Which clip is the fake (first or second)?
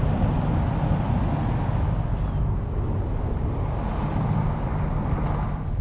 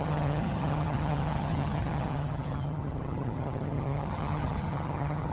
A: second